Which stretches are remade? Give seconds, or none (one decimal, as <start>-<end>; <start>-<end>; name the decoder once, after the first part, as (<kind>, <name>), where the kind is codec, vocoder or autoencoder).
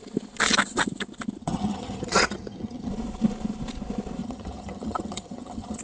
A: 1.4-2.9 (vocoder, HiFi-GAN); 4.2-5.8